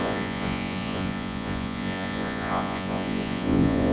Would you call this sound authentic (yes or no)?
no